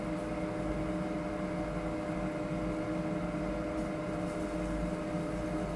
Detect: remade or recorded recorded